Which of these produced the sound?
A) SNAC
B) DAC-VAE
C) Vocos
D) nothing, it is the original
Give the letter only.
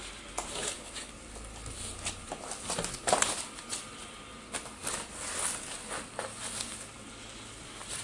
D